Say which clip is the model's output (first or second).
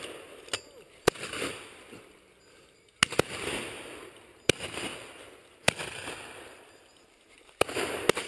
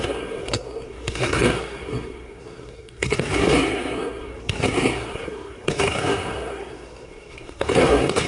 second